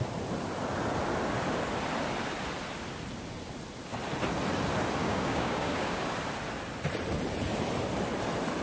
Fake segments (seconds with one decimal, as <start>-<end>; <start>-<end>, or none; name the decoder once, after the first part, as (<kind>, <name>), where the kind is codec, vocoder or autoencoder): 5.0-6.0 (codec, DAC)